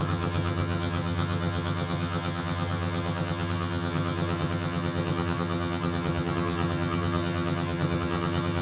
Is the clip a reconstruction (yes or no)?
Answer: yes